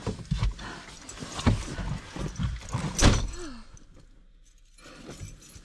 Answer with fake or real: real